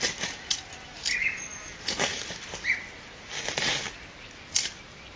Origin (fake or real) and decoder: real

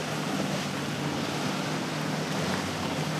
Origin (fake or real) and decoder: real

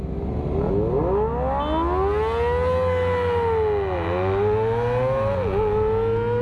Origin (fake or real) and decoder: real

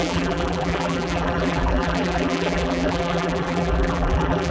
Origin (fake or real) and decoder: fake, vocoder, BigVGAN v2